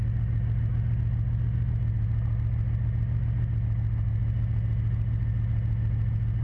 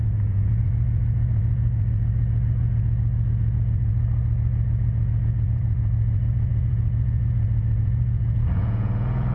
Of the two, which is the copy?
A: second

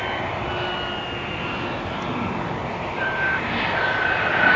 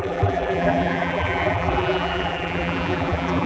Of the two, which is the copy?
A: second